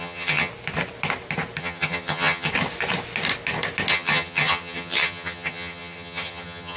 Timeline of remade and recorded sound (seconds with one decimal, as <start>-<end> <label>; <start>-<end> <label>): 0.0-0.5 remade; 0.5-1.6 recorded; 1.6-2.5 remade; 2.5-3.9 recorded; 3.9-6.8 remade